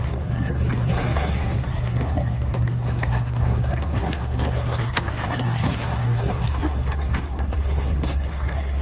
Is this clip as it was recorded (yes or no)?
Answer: no